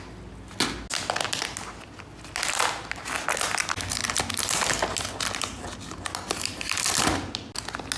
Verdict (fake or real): real